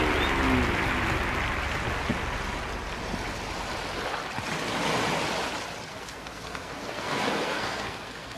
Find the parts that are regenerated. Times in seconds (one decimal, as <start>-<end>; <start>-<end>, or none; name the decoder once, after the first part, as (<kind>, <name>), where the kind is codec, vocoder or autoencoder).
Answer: 5.9-8.4 (codec, SNAC)